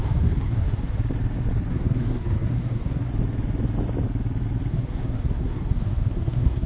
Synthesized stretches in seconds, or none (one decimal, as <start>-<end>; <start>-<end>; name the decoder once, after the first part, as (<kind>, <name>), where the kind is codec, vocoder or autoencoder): 0.0-1.0 (codec, SNAC); 1.7-3.1; 4.7-6.7